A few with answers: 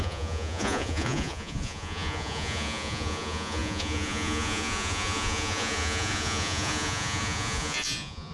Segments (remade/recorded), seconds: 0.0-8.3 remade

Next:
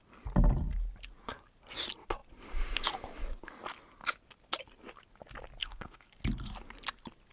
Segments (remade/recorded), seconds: 0.0-5.6 recorded; 5.6-6.1 remade; 6.1-7.3 recorded

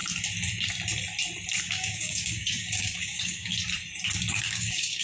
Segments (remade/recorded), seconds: 0.0-1.6 recorded; 1.6-3.5 remade; 3.5-4.4 recorded; 4.4-5.0 remade